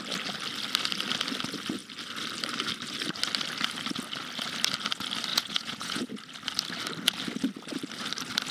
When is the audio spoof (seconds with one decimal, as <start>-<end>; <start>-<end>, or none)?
5.3-6.1